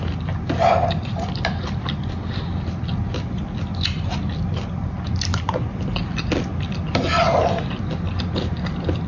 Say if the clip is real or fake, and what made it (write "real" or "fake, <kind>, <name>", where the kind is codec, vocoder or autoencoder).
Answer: real